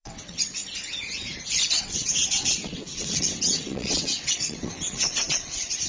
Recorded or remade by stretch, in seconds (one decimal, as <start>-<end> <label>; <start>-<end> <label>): 0.0-0.6 remade; 0.6-1.8 recorded; 1.8-5.9 remade